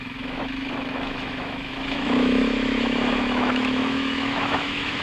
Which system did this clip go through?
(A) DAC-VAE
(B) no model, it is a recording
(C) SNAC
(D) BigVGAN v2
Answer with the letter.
A